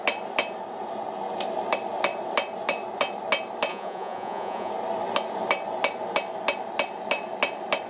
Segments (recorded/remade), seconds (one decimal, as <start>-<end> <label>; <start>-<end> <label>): 0.0-3.7 recorded; 3.7-4.7 remade; 4.7-7.9 recorded